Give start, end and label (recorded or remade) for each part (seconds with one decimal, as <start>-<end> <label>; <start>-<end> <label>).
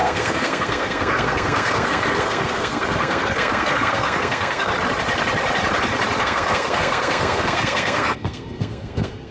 0.0-4.7 remade; 4.7-6.2 recorded; 6.2-9.3 remade